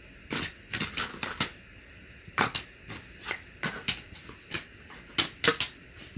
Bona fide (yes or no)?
yes